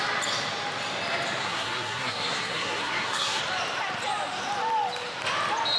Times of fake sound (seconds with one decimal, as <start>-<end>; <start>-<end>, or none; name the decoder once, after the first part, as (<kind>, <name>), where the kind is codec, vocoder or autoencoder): 1.4-3.4 (codec, SNAC)